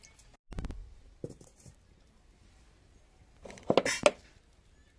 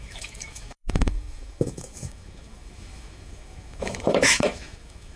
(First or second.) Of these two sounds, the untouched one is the first